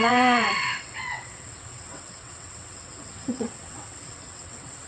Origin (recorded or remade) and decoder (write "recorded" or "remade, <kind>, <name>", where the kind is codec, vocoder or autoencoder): remade, vocoder, WaveNeXt